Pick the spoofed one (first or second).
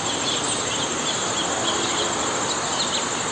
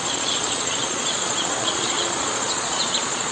second